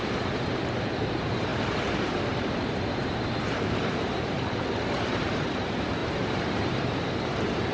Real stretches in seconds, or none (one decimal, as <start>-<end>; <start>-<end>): none